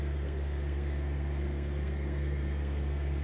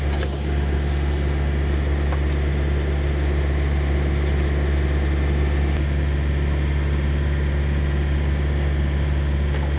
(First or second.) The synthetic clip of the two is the first